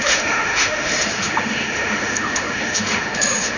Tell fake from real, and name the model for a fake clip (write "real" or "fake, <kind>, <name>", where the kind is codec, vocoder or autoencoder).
fake, autoencoder, DAC-VAE